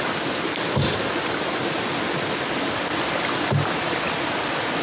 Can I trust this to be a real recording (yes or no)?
yes